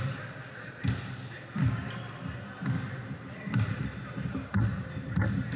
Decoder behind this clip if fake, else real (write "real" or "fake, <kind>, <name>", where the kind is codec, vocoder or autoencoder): real